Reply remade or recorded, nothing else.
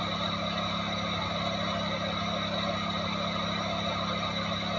recorded